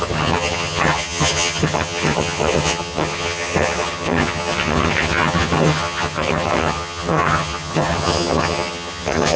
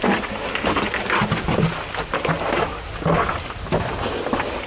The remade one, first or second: first